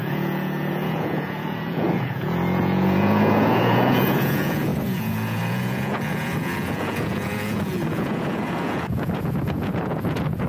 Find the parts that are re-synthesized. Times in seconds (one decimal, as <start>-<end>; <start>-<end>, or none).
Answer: 0.0-10.5